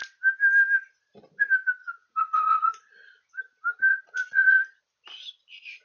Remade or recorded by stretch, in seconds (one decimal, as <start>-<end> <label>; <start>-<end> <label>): 0.0-1.8 recorded; 1.8-3.3 remade; 3.3-3.9 recorded; 3.9-4.8 remade; 4.8-5.8 recorded